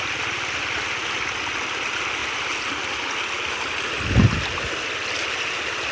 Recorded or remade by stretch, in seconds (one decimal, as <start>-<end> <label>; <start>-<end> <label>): 0.0-5.9 recorded